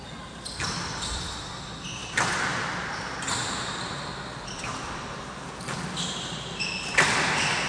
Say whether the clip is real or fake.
real